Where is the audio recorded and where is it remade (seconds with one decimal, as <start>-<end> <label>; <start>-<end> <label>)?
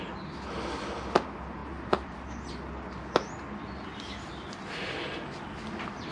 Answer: 0.0-1.6 recorded; 1.6-2.5 remade; 2.5-6.1 recorded